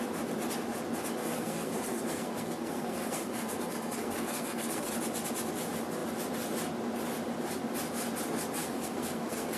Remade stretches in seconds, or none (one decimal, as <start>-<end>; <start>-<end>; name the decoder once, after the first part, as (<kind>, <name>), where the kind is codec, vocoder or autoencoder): 1.2-4.9 (codec, SNAC); 8.6-9.6